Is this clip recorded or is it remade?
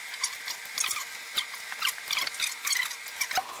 recorded